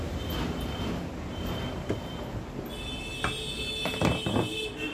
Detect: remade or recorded recorded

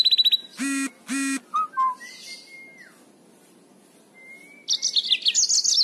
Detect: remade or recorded recorded